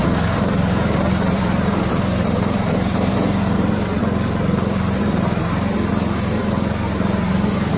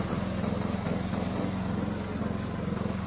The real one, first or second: second